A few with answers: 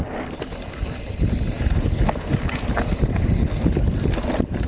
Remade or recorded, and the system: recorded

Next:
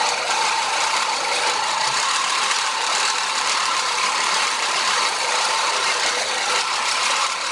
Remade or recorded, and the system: remade, vocoder, BigVGAN v2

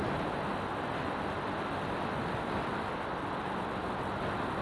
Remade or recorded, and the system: recorded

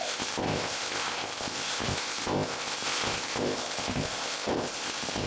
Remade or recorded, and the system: remade, codec, ZipCodec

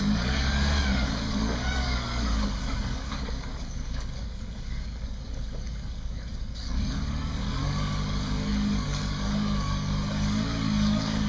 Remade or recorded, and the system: remade, codec, DAC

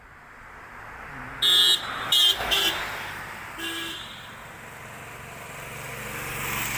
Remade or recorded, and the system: recorded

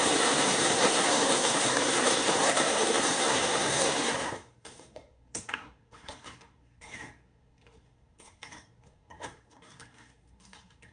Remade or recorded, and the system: remade, codec, SNAC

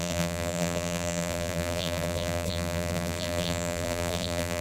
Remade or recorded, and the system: remade, vocoder, BigVGAN v2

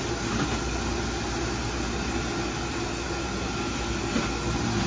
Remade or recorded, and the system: recorded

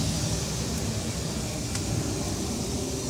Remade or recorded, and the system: recorded